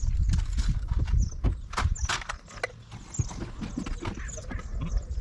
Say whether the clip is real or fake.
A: real